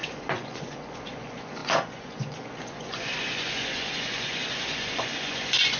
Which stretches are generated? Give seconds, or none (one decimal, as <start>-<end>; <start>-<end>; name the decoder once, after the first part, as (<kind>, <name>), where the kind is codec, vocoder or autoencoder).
0.0-5.8 (vocoder, Vocos)